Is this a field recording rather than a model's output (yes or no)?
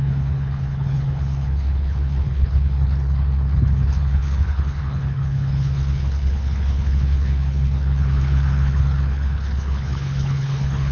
no